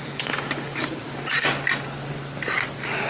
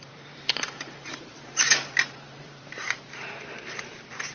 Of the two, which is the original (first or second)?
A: first